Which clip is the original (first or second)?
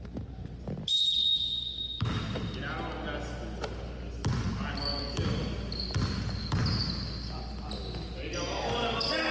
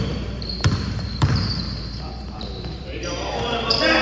first